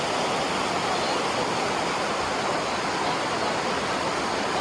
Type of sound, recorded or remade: recorded